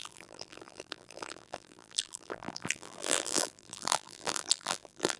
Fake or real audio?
fake